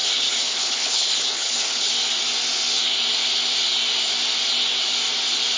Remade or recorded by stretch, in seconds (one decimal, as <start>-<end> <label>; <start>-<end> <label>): 0.0-1.9 remade; 1.9-5.6 recorded